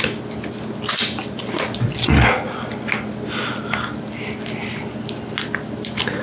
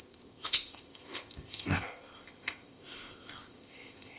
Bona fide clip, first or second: first